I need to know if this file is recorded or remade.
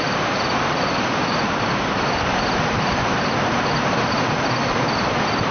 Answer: remade